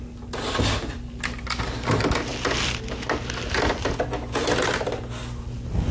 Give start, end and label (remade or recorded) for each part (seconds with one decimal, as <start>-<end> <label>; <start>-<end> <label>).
0.0-2.3 recorded; 2.3-2.9 remade; 2.9-4.4 recorded; 4.4-5.4 remade; 5.4-5.9 recorded